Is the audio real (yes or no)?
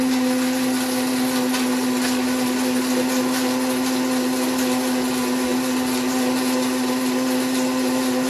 yes